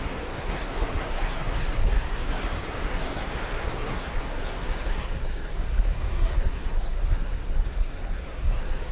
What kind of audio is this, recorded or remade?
remade